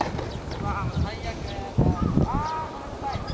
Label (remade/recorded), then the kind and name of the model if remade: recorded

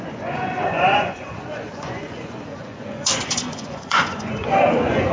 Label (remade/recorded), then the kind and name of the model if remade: remade, vocoder, Vocos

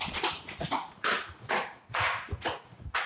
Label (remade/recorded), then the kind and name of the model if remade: remade, vocoder, Vocos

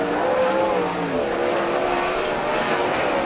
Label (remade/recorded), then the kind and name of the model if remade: recorded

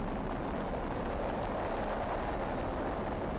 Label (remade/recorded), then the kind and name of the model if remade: recorded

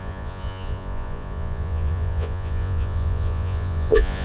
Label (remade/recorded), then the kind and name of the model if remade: remade, vocoder, Vocos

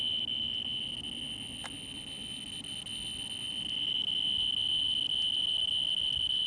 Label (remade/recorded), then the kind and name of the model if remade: recorded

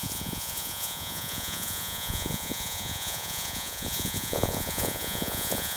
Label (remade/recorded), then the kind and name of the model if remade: remade, vocoder, Vocos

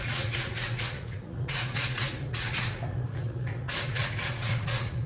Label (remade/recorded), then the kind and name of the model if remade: remade, vocoder, Vocos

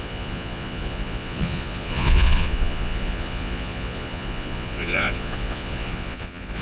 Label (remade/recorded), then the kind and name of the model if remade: remade, vocoder, Vocos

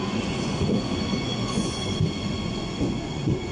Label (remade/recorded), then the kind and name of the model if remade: remade, vocoder, Vocos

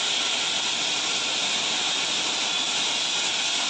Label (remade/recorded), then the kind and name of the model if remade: recorded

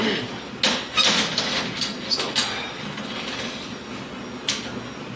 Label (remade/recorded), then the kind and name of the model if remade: recorded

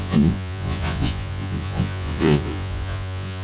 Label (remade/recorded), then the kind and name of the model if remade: remade, vocoder, Vocos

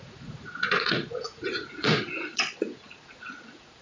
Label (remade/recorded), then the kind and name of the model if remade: remade, vocoder, Vocos